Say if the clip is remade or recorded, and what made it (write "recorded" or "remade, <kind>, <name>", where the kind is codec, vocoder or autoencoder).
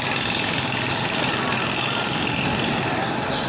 recorded